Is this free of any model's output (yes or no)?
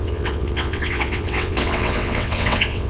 no